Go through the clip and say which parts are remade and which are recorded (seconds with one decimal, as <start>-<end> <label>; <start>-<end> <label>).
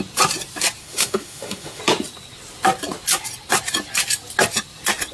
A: 0.0-0.8 recorded; 0.8-1.8 remade; 1.8-5.1 recorded